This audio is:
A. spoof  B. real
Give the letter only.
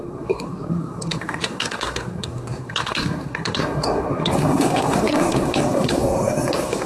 A